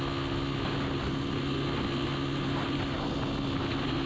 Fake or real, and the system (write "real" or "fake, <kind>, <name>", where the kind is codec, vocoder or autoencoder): real